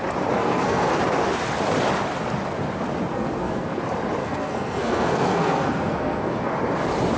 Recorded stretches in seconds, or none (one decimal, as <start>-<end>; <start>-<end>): 0.0-0.4; 1.0-3.1; 3.8-4.2; 6.5-7.2